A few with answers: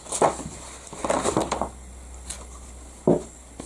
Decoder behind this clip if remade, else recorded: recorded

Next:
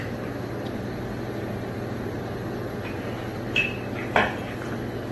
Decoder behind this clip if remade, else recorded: recorded